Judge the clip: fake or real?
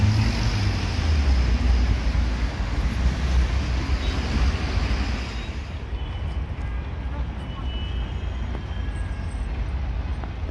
real